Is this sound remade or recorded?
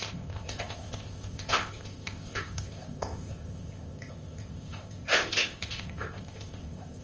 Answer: remade